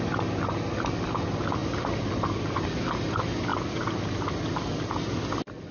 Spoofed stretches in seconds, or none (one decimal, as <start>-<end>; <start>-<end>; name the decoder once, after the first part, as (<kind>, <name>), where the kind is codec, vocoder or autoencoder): 1.6-2.9 (vocoder, BigVGAN v2)